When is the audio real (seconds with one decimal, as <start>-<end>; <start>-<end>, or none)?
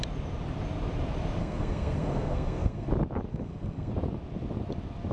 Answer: 0.0-1.4; 2.9-3.3; 3.9-5.1